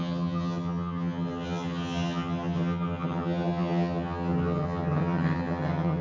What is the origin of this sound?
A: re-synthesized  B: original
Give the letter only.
A